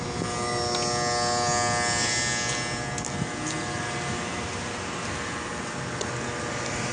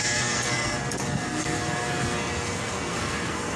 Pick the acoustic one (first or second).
first